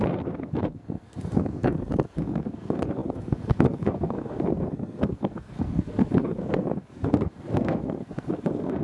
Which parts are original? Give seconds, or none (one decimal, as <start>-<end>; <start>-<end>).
none